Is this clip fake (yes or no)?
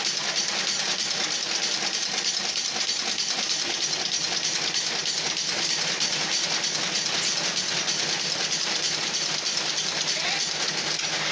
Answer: no